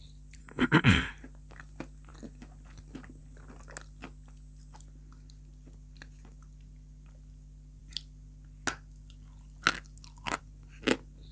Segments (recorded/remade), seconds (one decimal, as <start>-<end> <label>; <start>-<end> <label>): 0.0-0.4 recorded; 0.4-1.1 remade; 1.1-11.3 recorded